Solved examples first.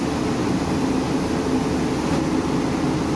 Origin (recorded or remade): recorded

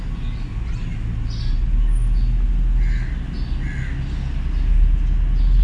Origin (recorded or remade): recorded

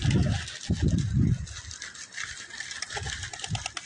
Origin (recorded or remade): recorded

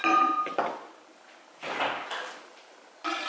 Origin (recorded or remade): recorded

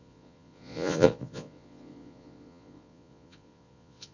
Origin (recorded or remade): remade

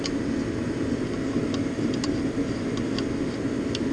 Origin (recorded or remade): recorded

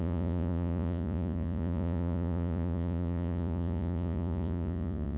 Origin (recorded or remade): remade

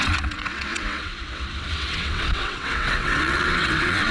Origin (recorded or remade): remade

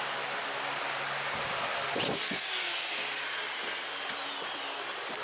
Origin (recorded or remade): recorded